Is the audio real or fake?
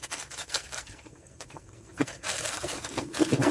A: fake